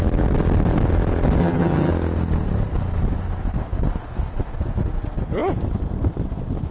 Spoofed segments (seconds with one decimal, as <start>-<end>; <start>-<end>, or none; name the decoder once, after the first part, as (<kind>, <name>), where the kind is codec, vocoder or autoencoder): 1.4-1.9 (vocoder, HiFi-GAN)